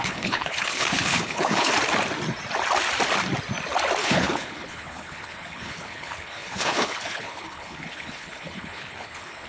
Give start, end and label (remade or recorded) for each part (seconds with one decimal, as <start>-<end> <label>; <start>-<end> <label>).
0.0-1.7 remade; 1.7-4.0 recorded; 4.0-9.5 remade